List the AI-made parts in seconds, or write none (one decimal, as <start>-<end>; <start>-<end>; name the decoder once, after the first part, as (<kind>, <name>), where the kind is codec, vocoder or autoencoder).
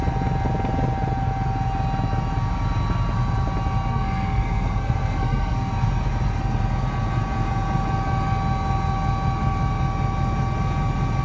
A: 3.9-5.7 (codec, SNAC)